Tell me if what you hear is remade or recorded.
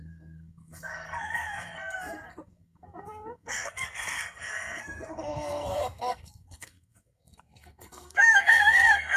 remade